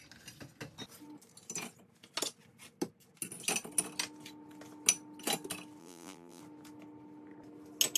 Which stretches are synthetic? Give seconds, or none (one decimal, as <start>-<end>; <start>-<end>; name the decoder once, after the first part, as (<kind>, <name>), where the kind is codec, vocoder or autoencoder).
5.8-6.4 (vocoder, BigVGAN v2)